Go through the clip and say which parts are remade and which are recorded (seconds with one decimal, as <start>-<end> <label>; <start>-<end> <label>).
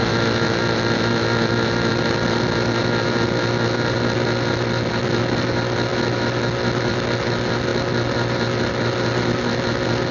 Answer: 0.0-10.1 recorded